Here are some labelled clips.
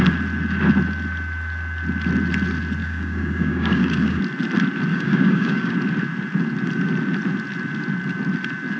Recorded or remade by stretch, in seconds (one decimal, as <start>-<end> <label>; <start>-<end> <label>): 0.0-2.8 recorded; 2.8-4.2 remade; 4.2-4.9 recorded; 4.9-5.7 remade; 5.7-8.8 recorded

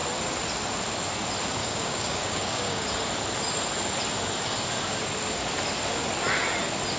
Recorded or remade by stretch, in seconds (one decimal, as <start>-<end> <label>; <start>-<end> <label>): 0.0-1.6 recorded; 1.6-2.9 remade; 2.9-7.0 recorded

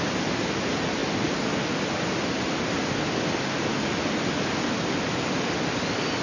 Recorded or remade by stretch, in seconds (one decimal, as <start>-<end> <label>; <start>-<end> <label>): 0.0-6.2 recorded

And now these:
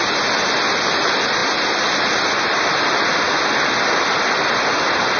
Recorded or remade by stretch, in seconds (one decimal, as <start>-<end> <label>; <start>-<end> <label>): 0.0-5.2 recorded